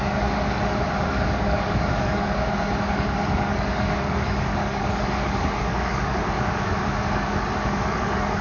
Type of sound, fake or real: fake